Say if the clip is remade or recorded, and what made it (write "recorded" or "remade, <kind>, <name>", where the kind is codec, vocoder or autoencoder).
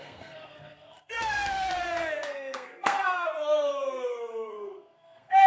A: remade, codec, SNAC